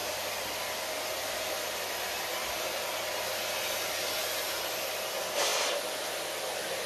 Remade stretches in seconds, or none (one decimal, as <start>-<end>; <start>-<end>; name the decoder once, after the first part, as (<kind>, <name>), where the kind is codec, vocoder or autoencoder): none